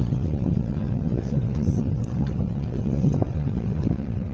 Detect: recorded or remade remade